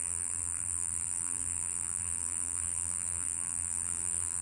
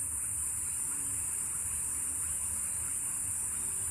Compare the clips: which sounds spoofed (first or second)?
first